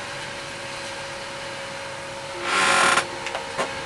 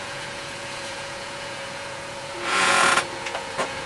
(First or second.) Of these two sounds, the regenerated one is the second